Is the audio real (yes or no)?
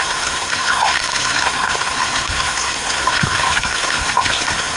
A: no